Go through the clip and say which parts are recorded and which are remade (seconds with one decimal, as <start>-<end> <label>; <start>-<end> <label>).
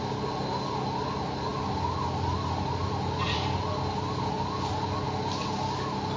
0.0-1.5 recorded; 1.5-4.3 remade; 4.3-6.2 recorded